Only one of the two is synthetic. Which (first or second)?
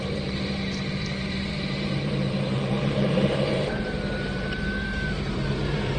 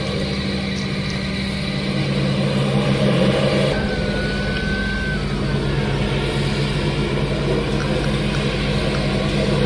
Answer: first